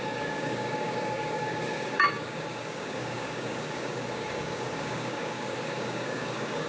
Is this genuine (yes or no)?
no